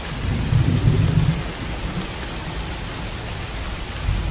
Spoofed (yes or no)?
no